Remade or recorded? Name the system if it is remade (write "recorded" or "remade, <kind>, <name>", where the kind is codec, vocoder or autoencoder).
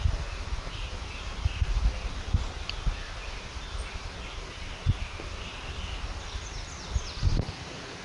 recorded